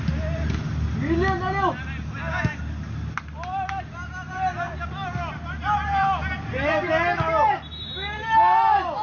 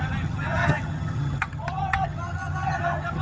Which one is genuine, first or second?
first